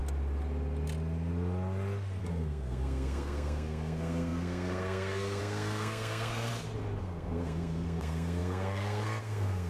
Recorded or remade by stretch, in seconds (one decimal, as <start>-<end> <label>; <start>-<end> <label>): 0.0-2.2 recorded; 2.2-6.5 remade; 6.5-7.0 recorded; 7.0-9.7 remade